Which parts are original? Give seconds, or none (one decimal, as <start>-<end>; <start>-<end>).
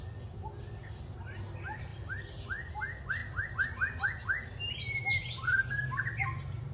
0.0-1.9; 2.7-3.2; 5.8-6.7